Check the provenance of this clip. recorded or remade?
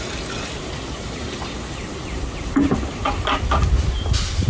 recorded